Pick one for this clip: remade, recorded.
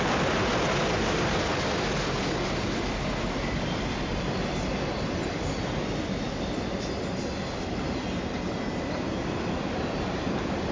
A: recorded